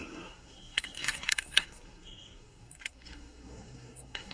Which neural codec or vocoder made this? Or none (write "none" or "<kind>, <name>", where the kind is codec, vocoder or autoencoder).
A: codec, SNAC